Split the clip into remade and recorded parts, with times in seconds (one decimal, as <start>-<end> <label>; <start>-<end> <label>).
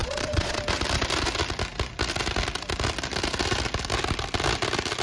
0.0-0.6 remade; 0.6-5.0 recorded